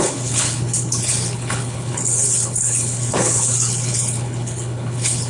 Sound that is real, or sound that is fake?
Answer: fake